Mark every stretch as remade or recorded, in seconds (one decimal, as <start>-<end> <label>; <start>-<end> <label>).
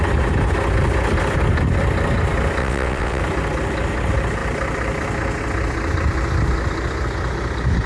0.0-2.6 recorded; 2.6-3.2 remade; 3.2-7.9 recorded